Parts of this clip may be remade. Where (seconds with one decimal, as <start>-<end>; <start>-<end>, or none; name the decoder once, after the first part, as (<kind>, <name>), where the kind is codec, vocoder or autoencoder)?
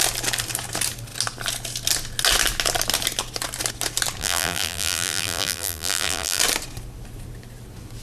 4.2-6.4 (vocoder, BigVGAN v2)